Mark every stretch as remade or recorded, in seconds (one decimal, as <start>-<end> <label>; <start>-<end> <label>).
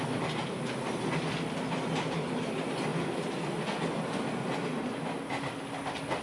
0.0-6.2 recorded